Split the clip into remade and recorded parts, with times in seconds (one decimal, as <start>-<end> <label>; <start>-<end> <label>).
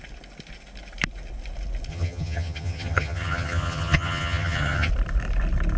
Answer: 0.0-1.9 recorded; 1.9-4.9 remade; 4.9-5.8 recorded